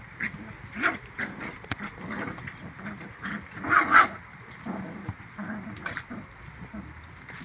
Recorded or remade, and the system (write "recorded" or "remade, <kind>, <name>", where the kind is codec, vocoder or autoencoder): remade, vocoder, BigVGAN v2